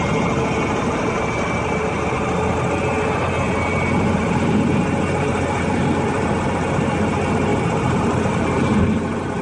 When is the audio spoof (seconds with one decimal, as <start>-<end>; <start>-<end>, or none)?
none